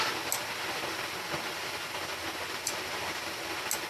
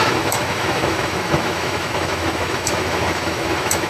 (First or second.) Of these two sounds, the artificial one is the second